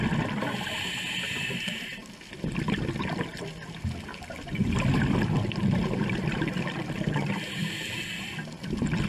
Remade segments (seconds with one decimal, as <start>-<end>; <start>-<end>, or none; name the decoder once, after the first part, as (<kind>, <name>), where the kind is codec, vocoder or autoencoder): none